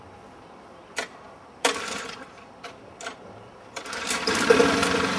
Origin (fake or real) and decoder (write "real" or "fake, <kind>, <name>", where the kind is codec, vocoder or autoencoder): fake, vocoder, BigVGAN v2